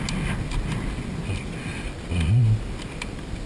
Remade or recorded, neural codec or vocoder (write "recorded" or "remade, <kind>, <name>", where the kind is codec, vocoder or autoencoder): recorded